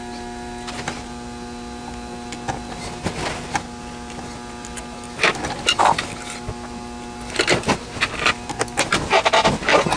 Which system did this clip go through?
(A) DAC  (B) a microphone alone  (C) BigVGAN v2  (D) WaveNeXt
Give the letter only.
B